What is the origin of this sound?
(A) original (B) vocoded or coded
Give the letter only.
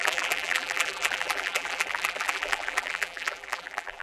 B